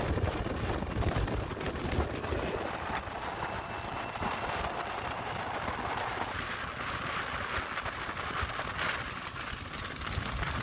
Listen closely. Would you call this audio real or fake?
real